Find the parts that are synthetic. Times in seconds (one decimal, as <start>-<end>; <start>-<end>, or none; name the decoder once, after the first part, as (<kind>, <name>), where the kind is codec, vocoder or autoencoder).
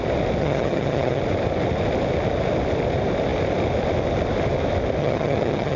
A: 0.4-1.2 (vocoder, HiFi-GAN); 5.0-5.8